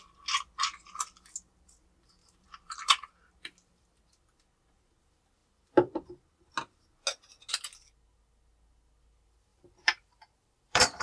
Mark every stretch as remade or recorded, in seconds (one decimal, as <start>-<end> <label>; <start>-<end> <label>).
0.0-2.2 recorded; 2.2-3.1 remade; 3.1-9.5 recorded; 9.5-11.0 remade